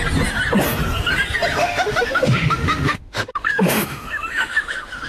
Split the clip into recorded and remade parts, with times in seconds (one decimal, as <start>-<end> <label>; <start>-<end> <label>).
0.0-1.6 recorded; 1.6-5.1 remade